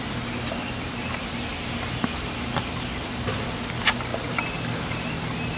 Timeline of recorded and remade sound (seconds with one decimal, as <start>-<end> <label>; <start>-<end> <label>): 0.0-5.6 recorded